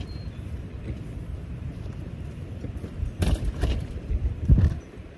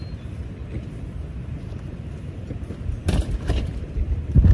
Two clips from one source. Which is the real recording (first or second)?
second